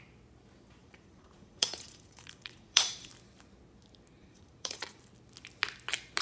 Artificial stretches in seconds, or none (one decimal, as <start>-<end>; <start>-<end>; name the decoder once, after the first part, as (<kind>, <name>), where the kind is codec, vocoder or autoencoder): 0.8-3.1 (vocoder, Vocos); 4.2-5.0